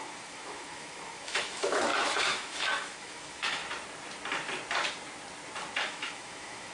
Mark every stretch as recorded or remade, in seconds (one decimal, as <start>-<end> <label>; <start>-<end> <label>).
0.0-3.6 remade; 3.6-5.8 recorded; 5.8-6.7 remade